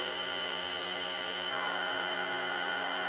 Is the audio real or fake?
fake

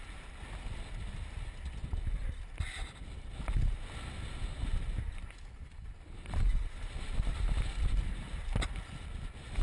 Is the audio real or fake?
real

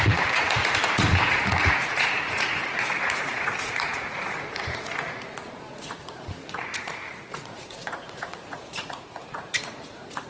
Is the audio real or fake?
fake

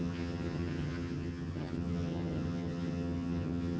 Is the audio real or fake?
fake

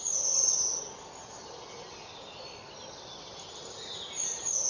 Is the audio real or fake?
real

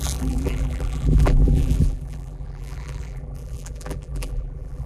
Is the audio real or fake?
fake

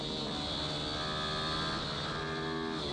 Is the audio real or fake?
real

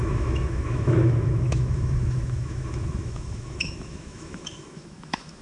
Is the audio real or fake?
fake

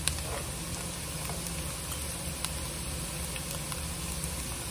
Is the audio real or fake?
real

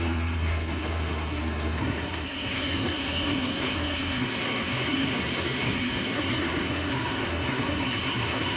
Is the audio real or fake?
fake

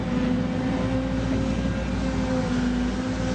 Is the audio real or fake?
real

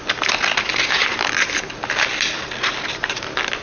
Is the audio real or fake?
real